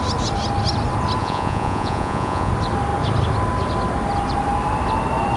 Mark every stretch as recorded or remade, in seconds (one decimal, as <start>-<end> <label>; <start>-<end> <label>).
0.0-1.2 recorded; 1.2-2.5 remade; 2.5-5.4 recorded